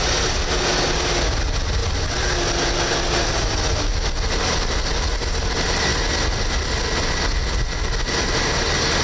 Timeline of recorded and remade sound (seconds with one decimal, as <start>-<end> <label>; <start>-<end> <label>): 0.0-9.0 recorded